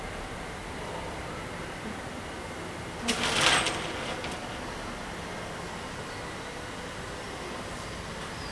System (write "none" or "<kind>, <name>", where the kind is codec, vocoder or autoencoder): none